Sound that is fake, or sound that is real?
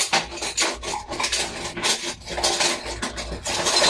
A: real